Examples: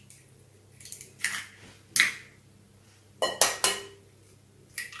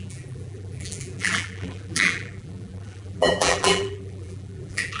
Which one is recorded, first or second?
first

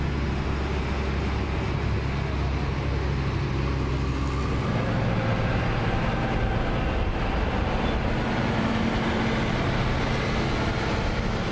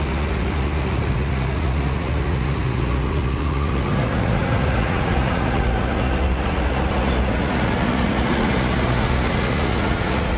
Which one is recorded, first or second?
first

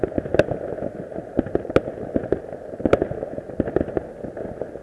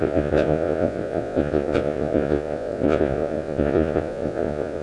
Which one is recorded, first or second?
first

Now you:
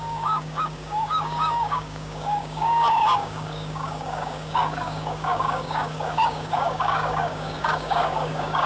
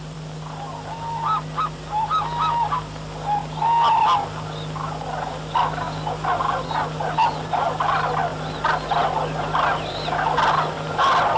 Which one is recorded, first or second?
second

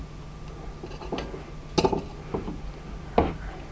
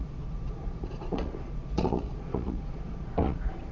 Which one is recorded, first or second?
first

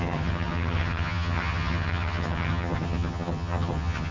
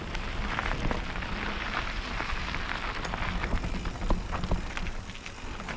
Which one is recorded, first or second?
second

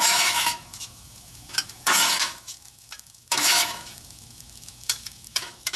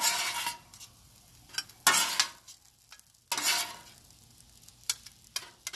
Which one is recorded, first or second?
second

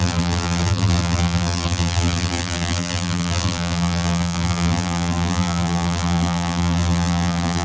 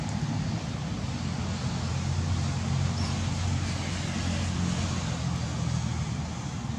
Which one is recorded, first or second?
second